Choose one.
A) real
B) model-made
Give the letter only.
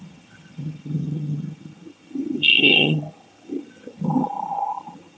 B